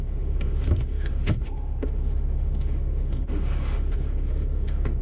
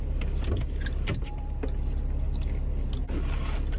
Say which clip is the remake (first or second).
first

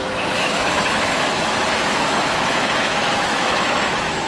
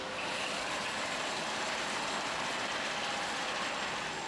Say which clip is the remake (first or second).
first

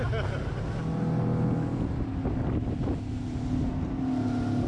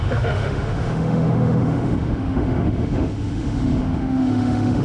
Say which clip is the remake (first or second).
second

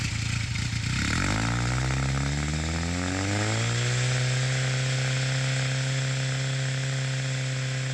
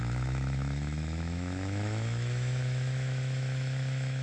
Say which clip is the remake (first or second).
second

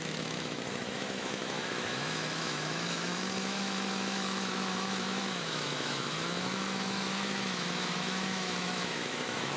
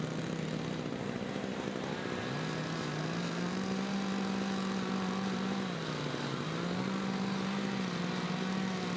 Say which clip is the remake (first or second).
first